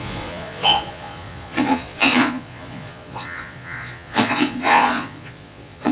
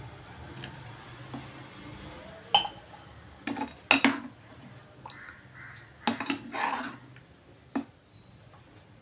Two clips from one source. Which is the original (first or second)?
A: second